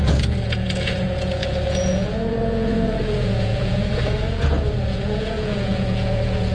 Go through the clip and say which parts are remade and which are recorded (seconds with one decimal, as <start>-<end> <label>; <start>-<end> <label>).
0.0-6.5 remade

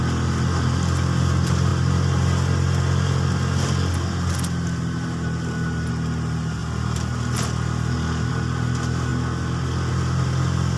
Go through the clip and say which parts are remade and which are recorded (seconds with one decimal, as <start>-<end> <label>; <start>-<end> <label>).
0.0-10.8 recorded

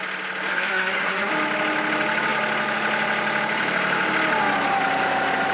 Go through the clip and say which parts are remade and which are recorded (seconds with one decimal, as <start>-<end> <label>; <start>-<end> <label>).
0.0-0.5 recorded; 0.5-1.3 remade; 1.3-5.5 recorded

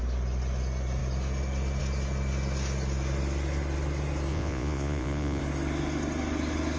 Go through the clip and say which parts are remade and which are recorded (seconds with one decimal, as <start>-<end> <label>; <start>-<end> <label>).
0.0-4.3 recorded; 4.3-5.4 remade; 5.4-6.8 recorded